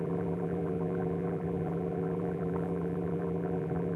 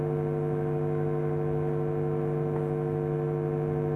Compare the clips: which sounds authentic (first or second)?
second